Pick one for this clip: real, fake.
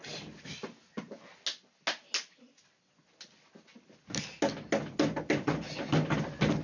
real